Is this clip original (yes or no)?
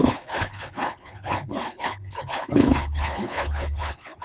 no